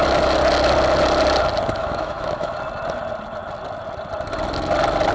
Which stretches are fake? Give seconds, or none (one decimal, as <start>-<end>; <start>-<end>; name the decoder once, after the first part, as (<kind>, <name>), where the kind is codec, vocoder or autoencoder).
1.8-2.5 (autoencoder, DAC-VAE)